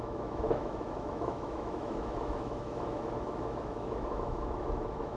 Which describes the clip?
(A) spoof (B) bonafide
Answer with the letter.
A